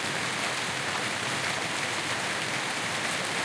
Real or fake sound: real